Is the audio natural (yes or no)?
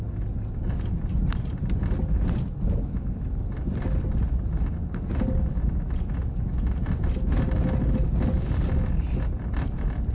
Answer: yes